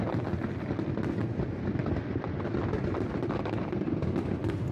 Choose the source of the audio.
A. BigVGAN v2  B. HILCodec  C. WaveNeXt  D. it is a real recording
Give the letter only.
D